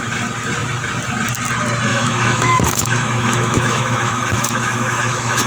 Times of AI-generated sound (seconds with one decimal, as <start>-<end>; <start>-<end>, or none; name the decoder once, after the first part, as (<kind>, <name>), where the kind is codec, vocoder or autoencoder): 1.9-5.5 (autoencoder, DAC-VAE)